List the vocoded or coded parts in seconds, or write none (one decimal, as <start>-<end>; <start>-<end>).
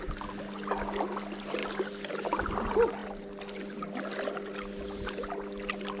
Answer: none